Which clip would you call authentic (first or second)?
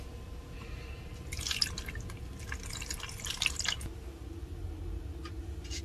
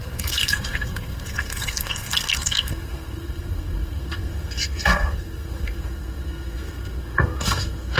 first